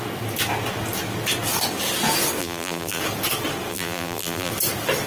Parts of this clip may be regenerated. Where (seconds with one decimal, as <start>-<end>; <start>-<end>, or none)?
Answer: 2.4-3.0; 3.7-4.5